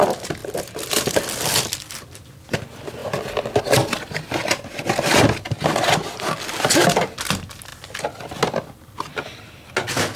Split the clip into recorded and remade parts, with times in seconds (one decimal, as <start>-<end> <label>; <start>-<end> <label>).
0.0-10.2 recorded

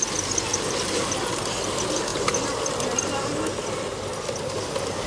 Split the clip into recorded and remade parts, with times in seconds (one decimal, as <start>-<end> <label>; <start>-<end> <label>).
0.0-5.1 recorded